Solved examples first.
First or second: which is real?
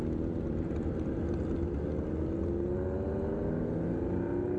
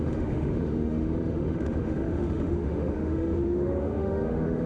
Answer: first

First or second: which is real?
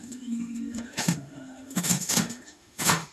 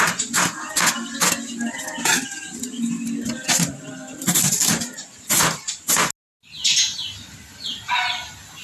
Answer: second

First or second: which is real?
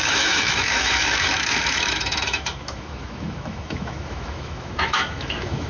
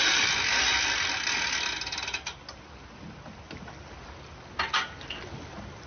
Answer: second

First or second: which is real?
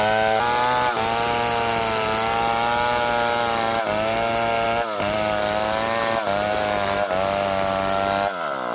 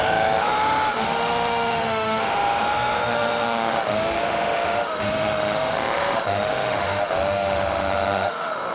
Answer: first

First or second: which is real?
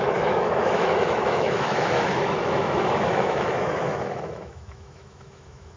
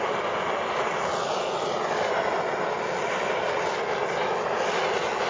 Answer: second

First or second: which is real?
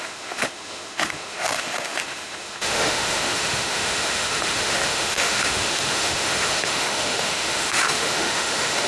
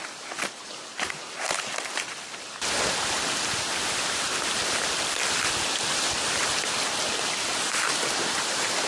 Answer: second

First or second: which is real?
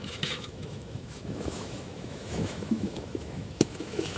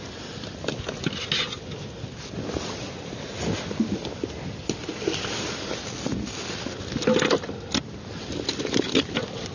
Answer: second